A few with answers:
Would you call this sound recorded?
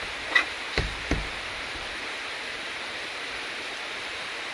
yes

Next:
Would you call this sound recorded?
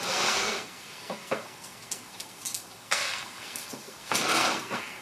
no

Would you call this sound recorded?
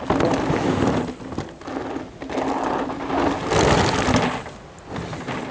yes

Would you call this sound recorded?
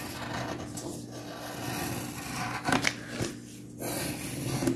yes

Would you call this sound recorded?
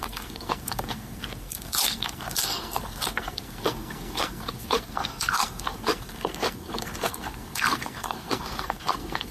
no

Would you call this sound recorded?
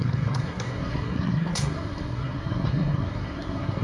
no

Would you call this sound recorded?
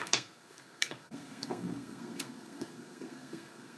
no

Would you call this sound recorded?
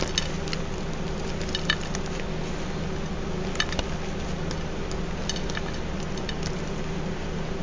yes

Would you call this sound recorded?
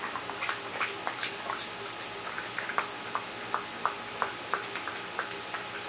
yes